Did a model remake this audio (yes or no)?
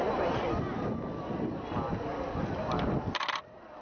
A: no